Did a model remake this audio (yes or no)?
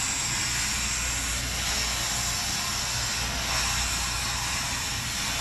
no